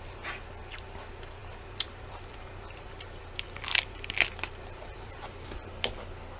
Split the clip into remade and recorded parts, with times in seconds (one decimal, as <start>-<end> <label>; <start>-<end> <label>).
0.0-1.4 recorded; 1.4-5.2 remade; 5.2-6.4 recorded